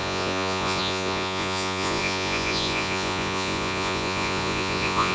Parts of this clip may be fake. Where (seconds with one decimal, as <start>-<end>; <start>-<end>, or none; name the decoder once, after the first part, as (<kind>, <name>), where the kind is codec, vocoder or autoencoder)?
0.0-5.1 (vocoder, Vocos)